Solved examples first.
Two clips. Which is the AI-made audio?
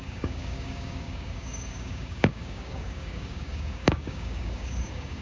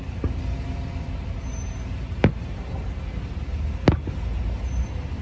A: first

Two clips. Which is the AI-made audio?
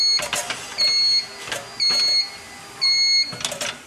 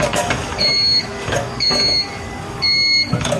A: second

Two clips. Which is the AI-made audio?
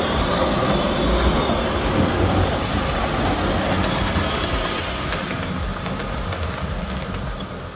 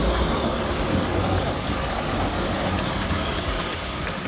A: second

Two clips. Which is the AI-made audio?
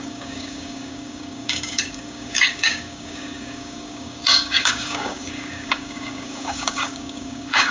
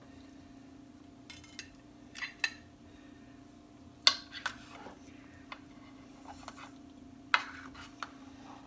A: first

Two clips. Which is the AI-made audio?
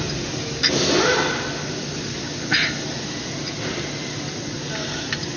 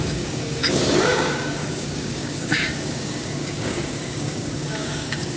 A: second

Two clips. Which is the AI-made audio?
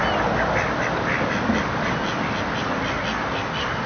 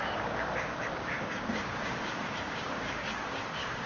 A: second